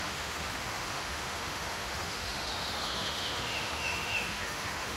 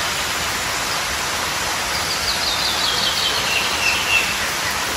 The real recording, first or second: second